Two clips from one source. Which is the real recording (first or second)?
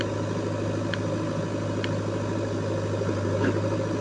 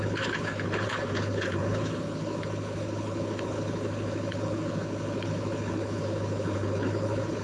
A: first